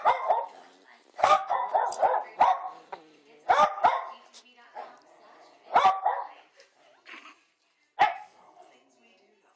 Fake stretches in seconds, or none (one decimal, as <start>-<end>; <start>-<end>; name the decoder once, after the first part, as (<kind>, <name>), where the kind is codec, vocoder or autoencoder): 1.2-1.7 (codec, SNAC); 8.1-8.7